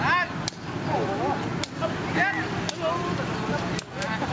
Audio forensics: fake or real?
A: real